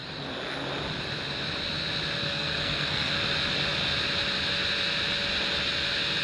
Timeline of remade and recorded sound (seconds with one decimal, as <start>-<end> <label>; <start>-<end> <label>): 0.0-2.2 recorded; 2.2-3.1 remade; 3.1-6.2 recorded